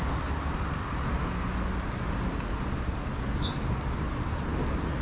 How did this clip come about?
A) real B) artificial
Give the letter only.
A